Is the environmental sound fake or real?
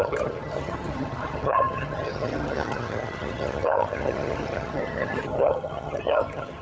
fake